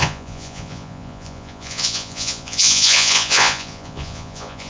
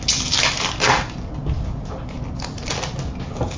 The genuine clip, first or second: second